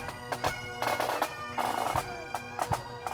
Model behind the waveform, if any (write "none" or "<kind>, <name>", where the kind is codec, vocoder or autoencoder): none